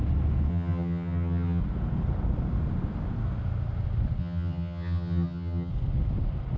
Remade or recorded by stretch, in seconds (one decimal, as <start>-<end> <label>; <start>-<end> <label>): 0.0-0.5 recorded; 0.5-1.6 remade; 1.6-4.2 recorded; 4.2-5.7 remade; 5.7-6.6 recorded